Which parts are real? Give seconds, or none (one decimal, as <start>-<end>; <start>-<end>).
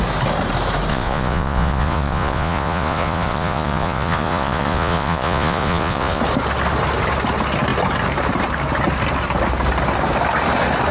0.0-0.9; 6.2-10.9